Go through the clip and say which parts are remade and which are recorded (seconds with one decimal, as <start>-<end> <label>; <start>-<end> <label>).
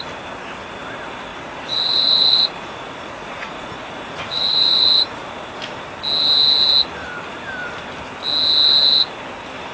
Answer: 0.0-1.3 recorded; 1.3-5.9 remade; 5.9-9.7 recorded